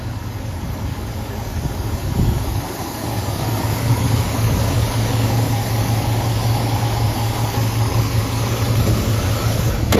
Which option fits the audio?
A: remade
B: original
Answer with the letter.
A